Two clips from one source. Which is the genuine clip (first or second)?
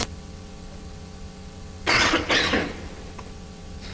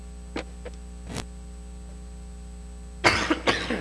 second